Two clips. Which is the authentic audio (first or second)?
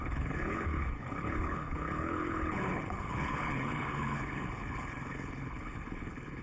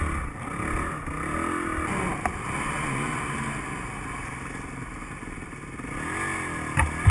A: second